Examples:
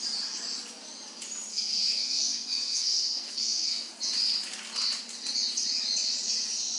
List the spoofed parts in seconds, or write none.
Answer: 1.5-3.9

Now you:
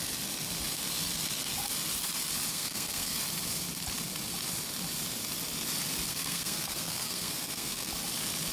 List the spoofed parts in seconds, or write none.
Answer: 2.5-3.2; 6.1-7.9

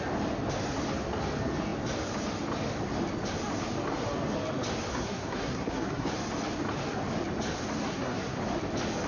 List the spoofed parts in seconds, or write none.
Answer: 4.9-6.1; 7.8-8.4

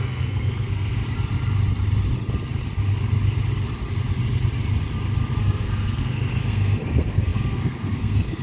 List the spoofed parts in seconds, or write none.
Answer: 0.0-1.0; 5.4-8.4

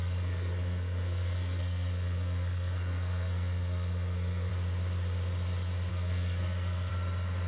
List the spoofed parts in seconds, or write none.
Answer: 0.0-4.5; 5.9-6.9

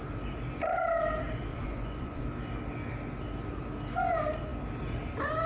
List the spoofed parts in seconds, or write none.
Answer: 1.5-2.2

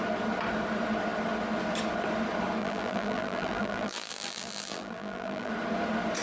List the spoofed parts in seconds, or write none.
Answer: 2.6-5.5

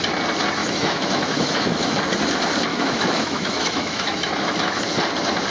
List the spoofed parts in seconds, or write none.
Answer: 0.6-2.0; 2.7-4.8